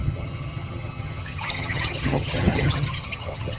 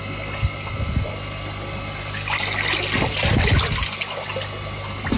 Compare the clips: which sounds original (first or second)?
second